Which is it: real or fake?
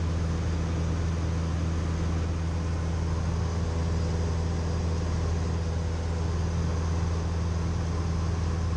real